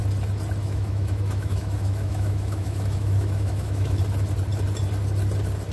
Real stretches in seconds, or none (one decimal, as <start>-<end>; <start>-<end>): 0.0-0.6; 4.0-5.7